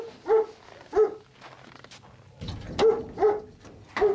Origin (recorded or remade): recorded